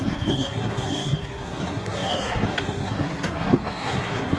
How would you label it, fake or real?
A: fake